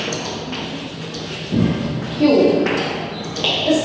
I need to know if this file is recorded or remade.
recorded